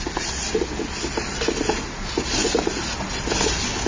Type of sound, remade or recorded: recorded